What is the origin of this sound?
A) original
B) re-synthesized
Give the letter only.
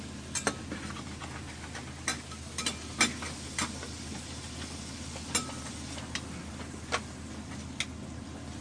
A